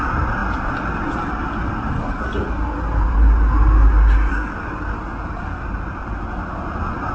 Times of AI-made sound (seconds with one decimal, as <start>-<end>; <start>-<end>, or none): none